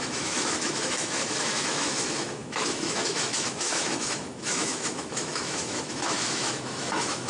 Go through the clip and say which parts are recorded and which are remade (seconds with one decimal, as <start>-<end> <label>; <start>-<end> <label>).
0.0-7.3 remade

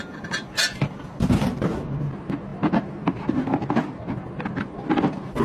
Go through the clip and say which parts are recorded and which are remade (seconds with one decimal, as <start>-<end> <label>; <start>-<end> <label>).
0.0-5.4 recorded

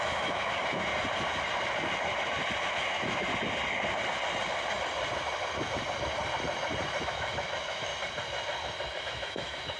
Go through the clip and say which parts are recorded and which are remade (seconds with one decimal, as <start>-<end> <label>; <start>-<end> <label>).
0.0-0.9 remade; 0.9-2.6 recorded; 2.6-3.3 remade; 3.3-7.0 recorded; 7.0-7.9 remade; 7.9-9.0 recorded; 9.0-9.8 remade

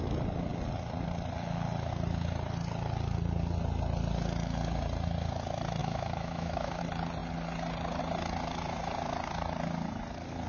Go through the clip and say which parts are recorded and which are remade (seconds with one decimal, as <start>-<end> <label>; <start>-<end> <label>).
0.0-5.8 recorded; 5.8-6.8 remade; 6.8-10.5 recorded